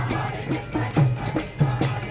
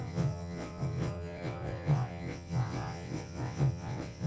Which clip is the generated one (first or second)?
second